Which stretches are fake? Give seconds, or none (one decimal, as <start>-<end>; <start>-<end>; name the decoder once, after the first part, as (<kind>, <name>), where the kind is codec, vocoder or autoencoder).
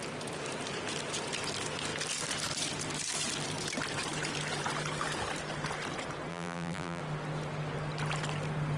6.3-7.0 (vocoder, BigVGAN v2)